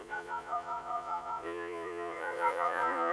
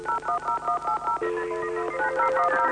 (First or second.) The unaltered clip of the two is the second